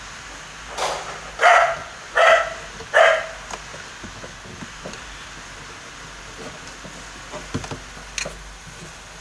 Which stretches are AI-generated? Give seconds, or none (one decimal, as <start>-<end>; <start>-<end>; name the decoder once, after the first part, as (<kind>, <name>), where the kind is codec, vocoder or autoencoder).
1.8-2.4 (vocoder, Vocos)